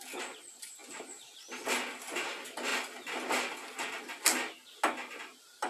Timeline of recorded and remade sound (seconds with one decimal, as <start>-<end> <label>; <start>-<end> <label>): 0.0-5.7 recorded